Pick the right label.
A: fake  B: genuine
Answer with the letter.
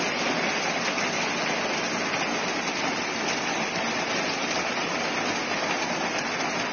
B